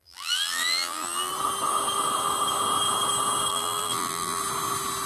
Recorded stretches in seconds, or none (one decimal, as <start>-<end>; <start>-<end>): 1.3-3.5; 4.4-5.1